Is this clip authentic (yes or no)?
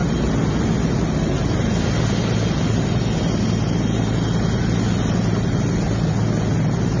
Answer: yes